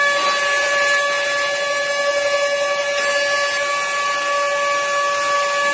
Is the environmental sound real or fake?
real